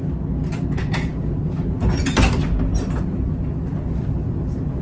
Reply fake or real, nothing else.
real